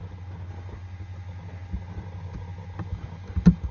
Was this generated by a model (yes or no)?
no